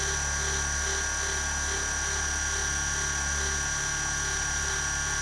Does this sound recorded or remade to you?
recorded